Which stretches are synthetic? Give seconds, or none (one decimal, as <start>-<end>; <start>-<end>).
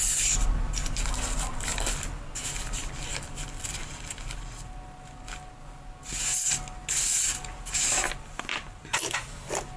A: none